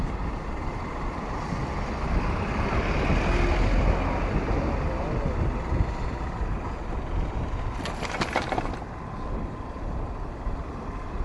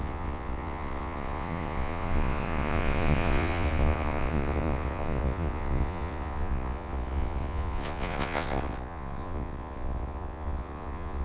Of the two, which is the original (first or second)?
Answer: first